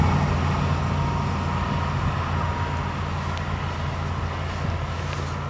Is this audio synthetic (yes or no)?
no